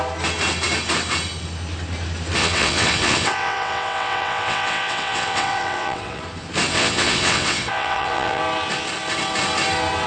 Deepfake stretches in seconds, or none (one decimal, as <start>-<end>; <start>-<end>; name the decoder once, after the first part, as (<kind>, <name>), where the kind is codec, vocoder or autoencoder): 2.4-6.2 (vocoder, WaveNeXt); 6.7-8.4